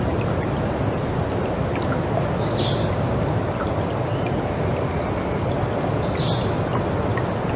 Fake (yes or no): no